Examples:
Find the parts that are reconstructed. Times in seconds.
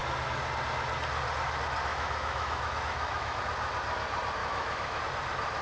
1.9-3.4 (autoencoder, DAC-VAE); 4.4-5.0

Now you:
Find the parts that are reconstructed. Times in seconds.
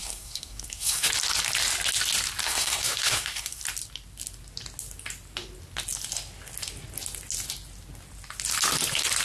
0.0-1.1 (codec, SNAC); 2.4-3.6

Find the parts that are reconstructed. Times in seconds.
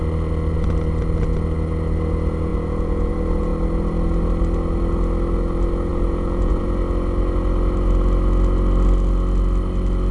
2.5-3.1 (vocoder, Vocos); 5.9-6.5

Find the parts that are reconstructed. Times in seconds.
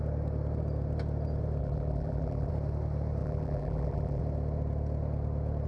1.6-2.5 (vocoder, BigVGAN v2); 3.2-4.2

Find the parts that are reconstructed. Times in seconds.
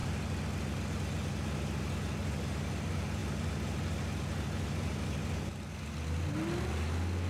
none